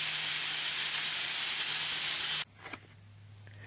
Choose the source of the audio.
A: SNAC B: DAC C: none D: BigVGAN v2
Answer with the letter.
C